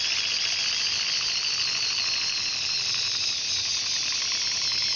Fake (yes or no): no